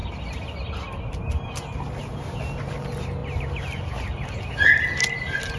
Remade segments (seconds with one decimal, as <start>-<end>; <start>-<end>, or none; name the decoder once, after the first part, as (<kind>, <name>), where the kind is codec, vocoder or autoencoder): none

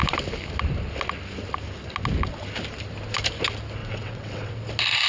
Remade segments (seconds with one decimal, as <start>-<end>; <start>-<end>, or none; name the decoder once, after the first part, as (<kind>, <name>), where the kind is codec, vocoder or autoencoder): 3.8-4.5 (vocoder, WaveNeXt)

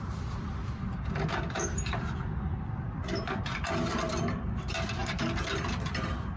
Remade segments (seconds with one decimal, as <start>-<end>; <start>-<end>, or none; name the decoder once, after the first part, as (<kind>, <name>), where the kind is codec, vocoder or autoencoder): 0.0-6.4 (vocoder, BigVGAN v2)

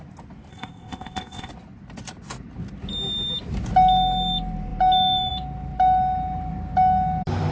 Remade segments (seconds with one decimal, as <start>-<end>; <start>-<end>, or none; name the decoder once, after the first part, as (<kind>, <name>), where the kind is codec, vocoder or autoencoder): 0.5-1.5 (codec, ZipCodec)

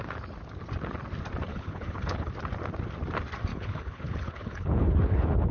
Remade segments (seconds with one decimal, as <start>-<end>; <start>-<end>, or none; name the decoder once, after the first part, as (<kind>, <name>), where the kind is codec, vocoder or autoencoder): 1.5-2.3 (codec, HILCodec); 3.5-5.5

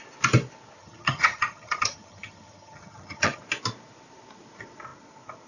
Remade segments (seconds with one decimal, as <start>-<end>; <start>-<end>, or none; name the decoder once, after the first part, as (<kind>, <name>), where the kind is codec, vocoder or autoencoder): 0.8-3.4 (vocoder, HiFi-GAN)

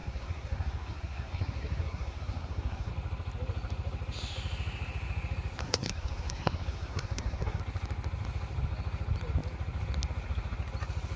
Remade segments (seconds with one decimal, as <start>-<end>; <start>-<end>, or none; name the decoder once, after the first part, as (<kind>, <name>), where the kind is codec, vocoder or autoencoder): 0.0-2.9 (codec, SNAC); 5.6-7.6

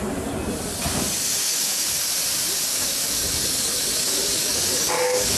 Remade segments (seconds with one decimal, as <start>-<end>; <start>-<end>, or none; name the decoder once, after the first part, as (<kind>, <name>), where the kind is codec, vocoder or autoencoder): 1.4-2.0 (codec, DAC); 2.7-5.4